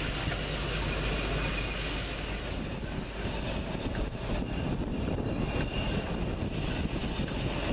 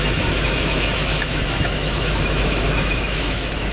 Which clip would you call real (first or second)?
first